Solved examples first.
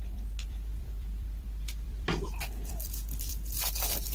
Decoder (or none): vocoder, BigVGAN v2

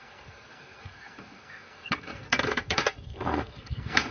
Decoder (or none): codec, SNAC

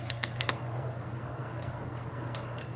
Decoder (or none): codec, SNAC